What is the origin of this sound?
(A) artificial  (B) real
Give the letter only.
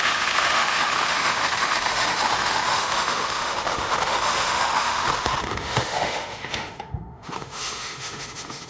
A